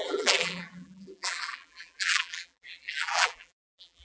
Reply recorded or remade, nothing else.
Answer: remade